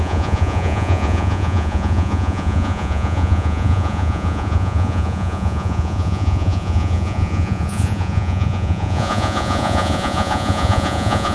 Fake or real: fake